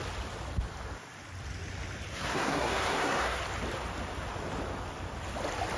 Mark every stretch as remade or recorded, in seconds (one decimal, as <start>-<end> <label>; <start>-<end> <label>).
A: 0.0-2.1 recorded; 2.1-3.4 remade; 3.4-5.8 recorded